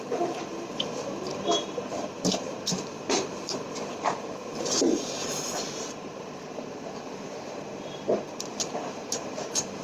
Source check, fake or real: fake